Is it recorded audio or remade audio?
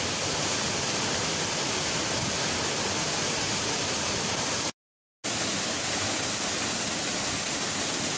recorded